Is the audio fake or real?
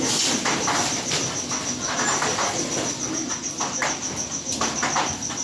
real